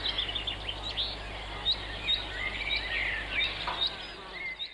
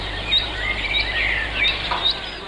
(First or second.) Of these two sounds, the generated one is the second